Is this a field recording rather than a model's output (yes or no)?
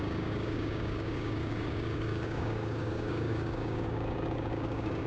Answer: no